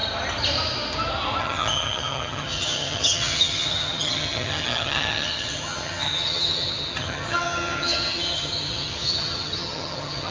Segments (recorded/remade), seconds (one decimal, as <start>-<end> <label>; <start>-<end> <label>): 0.0-1.4 recorded; 1.4-10.3 remade